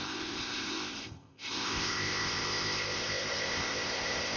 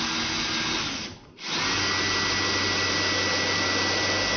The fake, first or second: first